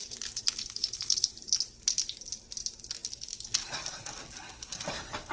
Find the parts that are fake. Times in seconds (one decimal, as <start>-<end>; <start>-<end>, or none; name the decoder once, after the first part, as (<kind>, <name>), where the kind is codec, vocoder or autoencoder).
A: 0.0-1.5 (vocoder, BigVGAN v2)